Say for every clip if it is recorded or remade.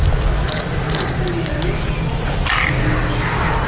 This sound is recorded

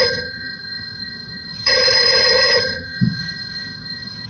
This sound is remade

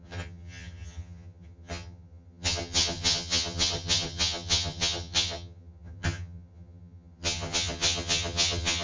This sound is remade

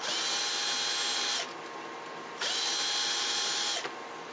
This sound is recorded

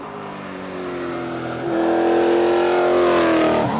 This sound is recorded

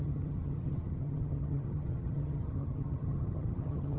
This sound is remade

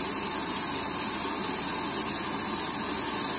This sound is recorded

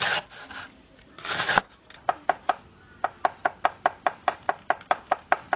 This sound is recorded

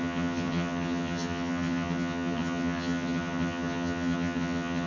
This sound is remade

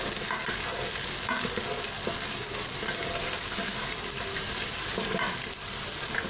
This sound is recorded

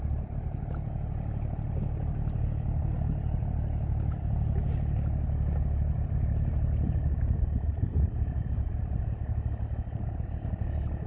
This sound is recorded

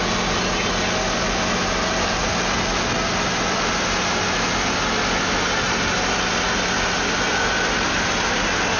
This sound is recorded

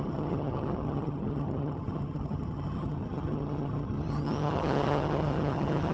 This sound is remade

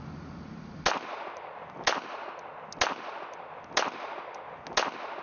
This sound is recorded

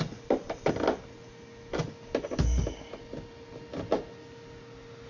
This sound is recorded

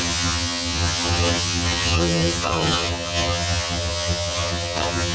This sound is remade